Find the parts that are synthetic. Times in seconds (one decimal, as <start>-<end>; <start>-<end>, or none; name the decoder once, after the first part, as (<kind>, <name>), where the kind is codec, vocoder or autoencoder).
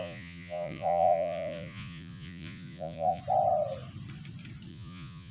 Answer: 0.0-3.2 (vocoder, Vocos); 4.7-5.3